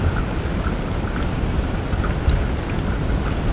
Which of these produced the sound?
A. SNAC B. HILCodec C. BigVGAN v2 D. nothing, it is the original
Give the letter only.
D